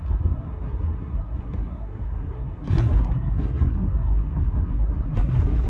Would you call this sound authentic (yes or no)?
no